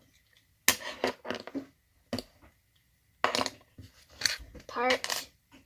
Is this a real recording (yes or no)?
yes